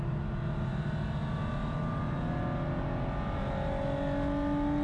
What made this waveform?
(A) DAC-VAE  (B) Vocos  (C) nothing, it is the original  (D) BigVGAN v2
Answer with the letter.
C